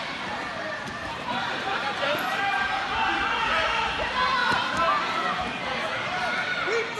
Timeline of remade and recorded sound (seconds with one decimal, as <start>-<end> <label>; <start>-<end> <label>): 0.0-1.0 recorded; 1.0-2.8 remade; 2.8-4.4 recorded; 4.4-5.4 remade; 5.4-7.0 recorded